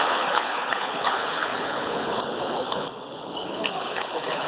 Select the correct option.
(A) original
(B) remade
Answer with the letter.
B